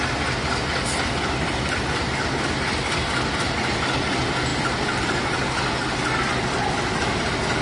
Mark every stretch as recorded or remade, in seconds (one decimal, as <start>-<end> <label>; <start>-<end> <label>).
0.0-7.6 recorded